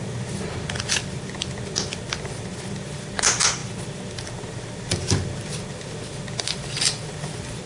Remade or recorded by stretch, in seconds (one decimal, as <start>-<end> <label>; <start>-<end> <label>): 0.0-7.7 recorded